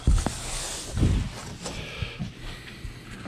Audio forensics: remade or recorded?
recorded